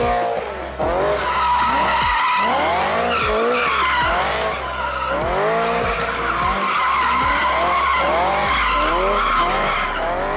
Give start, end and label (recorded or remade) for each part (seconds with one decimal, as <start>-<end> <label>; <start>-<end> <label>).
0.0-10.4 recorded